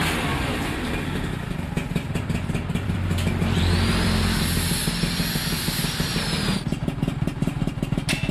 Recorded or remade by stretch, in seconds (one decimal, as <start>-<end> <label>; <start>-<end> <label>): 0.0-4.7 remade; 4.7-8.3 recorded